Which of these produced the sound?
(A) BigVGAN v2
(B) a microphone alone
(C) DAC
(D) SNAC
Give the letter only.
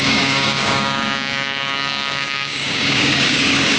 C